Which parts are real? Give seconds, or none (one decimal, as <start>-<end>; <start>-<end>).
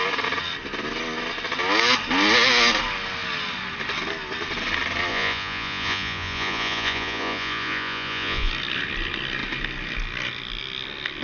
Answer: 0.0-5.1; 8.5-11.2